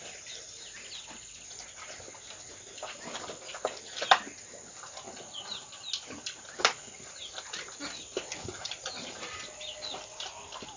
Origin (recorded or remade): recorded